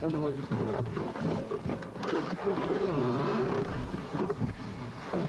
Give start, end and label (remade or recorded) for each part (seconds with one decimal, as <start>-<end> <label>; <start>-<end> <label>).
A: 0.0-1.0 remade; 1.0-2.0 recorded; 2.0-3.0 remade; 3.0-3.6 recorded; 3.6-5.3 remade